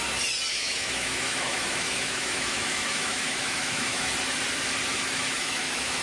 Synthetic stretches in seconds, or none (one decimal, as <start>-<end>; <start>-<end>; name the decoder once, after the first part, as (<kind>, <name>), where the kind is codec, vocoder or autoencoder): 0.5-4.1 (autoencoder, DAC-VAE); 4.9-6.0